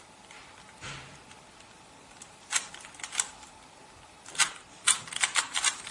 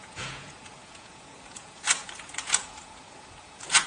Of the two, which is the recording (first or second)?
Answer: first